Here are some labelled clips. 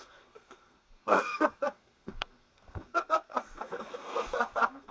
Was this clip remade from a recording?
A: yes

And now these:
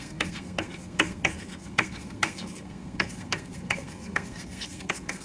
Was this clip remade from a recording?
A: yes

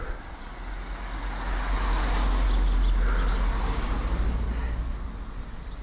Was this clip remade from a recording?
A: no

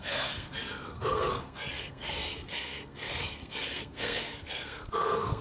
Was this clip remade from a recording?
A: yes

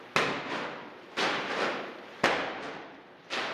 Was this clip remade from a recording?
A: no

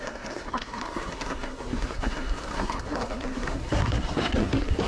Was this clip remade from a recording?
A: yes